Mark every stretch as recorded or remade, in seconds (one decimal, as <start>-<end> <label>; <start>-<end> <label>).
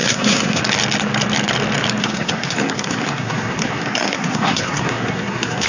0.0-0.6 remade; 0.6-2.0 recorded; 2.0-5.7 remade